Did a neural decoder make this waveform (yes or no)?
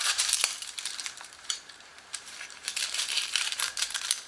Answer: yes